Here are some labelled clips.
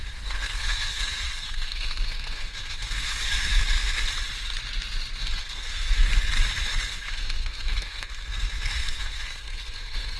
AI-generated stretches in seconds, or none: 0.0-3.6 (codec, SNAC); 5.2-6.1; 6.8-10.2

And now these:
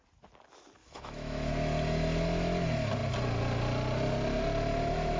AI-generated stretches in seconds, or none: 0.8-1.5 (autoencoder, DAC-VAE)